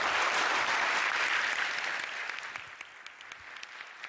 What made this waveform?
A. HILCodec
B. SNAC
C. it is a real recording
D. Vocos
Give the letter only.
C